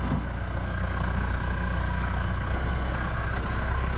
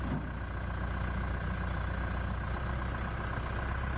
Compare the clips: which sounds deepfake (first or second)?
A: first